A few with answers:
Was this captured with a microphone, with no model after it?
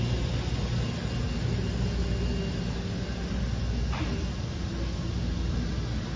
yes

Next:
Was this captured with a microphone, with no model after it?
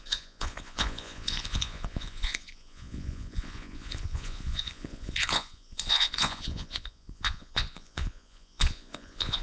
no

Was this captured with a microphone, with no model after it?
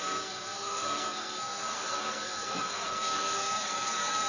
no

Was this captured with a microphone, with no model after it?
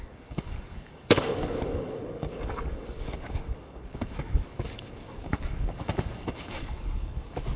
no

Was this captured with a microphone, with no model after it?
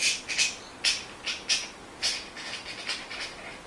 yes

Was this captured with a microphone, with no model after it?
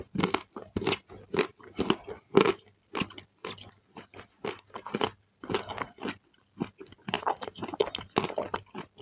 yes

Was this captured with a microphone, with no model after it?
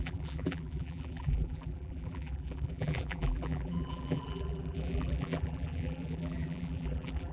no